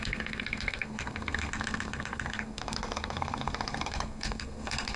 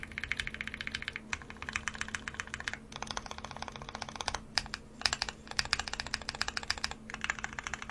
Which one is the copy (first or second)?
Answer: first